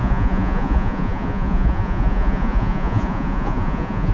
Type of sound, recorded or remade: remade